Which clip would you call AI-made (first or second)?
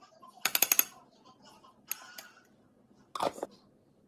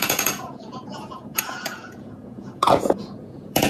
second